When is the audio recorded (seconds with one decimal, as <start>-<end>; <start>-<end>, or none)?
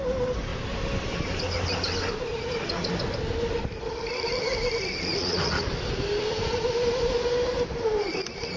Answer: 0.0-5.2; 5.7-8.6